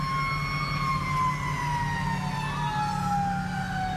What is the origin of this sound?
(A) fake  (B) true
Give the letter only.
B